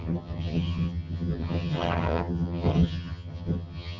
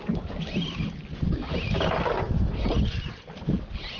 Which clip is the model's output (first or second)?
first